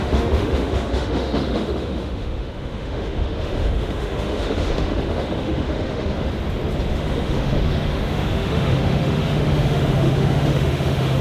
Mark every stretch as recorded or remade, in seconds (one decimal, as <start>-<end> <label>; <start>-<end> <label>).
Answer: 0.0-6.3 remade; 6.3-6.9 recorded; 6.9-11.2 remade